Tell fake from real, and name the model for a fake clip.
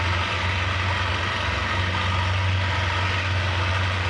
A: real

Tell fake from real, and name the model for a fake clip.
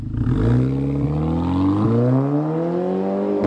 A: real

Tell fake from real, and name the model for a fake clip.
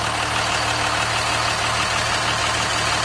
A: real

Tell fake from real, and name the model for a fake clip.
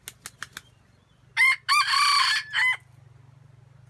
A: real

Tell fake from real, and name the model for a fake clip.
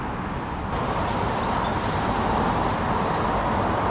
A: real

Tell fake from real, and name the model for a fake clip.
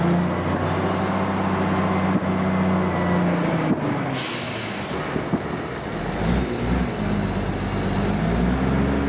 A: real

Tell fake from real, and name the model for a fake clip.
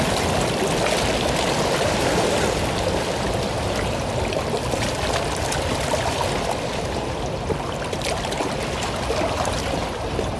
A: real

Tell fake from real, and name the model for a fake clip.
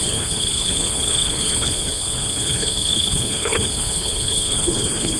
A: fake, codec, HILCodec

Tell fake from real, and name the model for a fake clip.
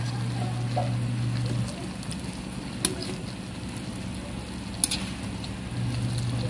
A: real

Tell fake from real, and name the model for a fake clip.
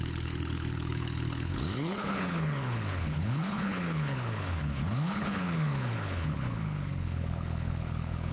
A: fake, codec, HILCodec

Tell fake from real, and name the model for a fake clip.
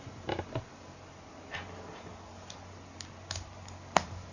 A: real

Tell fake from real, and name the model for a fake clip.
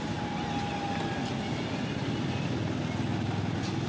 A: real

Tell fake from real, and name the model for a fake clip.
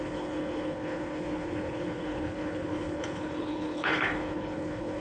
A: fake, codec, HILCodec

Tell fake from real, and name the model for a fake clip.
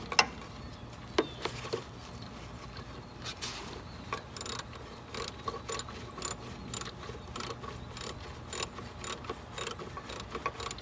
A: real